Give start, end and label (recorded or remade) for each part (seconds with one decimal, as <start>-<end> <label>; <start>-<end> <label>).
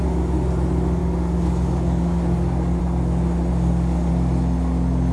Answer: 0.0-1.0 recorded; 1.0-2.8 remade; 2.8-3.5 recorded; 3.5-4.1 remade; 4.1-5.1 recorded